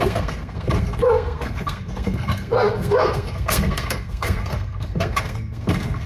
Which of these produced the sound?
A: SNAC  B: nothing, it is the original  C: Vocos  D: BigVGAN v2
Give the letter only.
A